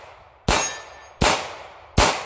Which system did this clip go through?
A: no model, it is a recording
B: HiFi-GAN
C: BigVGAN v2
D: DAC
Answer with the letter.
A